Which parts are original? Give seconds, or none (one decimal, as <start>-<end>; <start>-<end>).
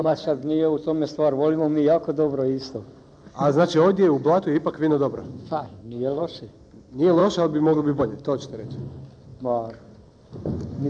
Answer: 0.0-5.3; 6.2-10.9